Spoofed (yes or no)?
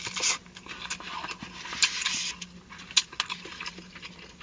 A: no